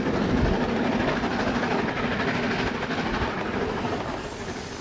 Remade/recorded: recorded